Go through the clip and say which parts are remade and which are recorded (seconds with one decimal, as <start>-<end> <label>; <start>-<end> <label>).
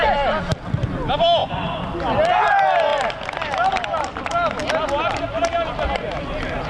0.0-1.4 recorded; 1.4-1.9 remade; 1.9-6.7 recorded